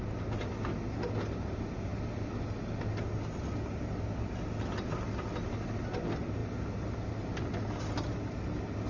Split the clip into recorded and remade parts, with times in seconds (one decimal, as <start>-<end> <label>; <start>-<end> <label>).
0.0-8.9 recorded